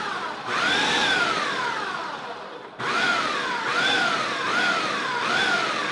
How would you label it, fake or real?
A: real